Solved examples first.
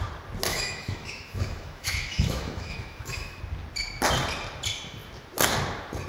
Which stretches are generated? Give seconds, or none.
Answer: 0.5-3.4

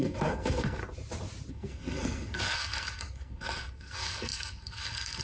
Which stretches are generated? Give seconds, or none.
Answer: 0.0-0.8; 1.5-5.2

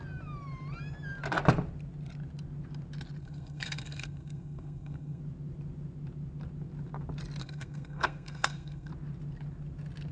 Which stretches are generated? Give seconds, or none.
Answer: 3.2-5.2; 7.4-8.9

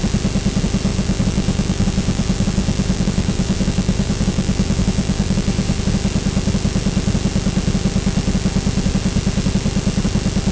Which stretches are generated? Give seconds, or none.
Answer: 0.9-5.8

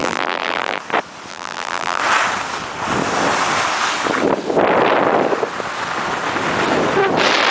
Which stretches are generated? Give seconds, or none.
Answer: 0.0-0.8; 1.3-2.0

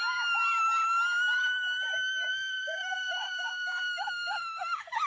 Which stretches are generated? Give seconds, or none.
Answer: 2.3-5.1

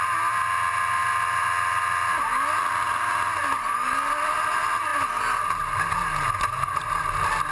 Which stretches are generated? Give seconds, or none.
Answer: none